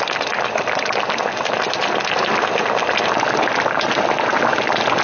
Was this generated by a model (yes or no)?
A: no